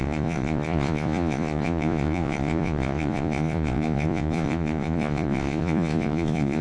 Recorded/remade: remade